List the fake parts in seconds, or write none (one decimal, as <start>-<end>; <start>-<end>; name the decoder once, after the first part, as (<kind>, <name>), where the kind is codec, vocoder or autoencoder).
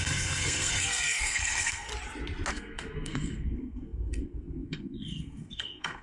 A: 0.0-1.9 (codec, SNAC); 2.5-6.0